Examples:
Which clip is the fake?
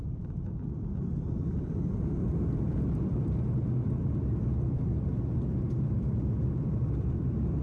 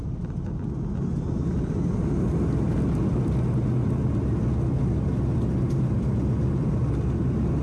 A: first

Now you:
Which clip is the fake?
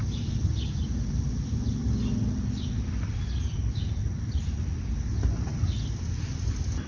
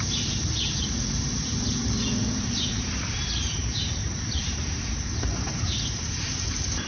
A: second